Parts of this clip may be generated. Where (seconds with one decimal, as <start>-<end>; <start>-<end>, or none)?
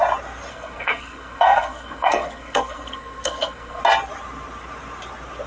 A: 0.5-3.8